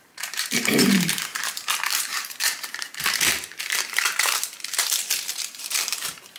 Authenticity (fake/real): fake